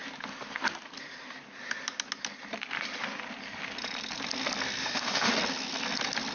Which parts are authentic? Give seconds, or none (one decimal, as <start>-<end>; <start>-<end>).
0.0-4.8; 5.3-6.3